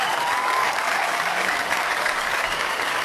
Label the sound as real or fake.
fake